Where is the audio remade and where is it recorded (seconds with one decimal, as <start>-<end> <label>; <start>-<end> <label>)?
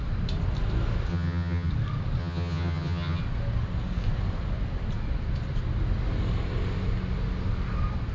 0.0-1.1 recorded; 1.1-1.7 remade; 1.7-2.2 recorded; 2.2-3.2 remade; 3.2-8.1 recorded